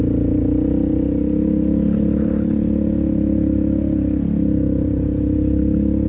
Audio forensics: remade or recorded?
recorded